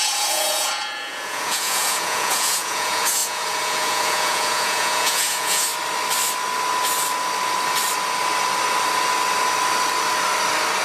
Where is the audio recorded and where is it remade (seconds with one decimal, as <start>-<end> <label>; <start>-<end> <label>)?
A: 0.0-5.7 remade; 5.7-10.8 recorded